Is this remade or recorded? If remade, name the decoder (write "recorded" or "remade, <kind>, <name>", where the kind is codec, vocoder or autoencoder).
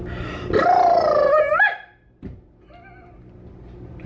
recorded